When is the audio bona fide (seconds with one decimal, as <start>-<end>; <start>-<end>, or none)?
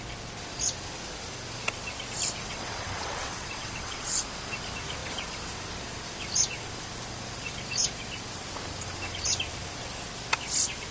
0.0-2.4; 4.2-10.9